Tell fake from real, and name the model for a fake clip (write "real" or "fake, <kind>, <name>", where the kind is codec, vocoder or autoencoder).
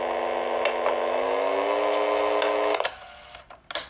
real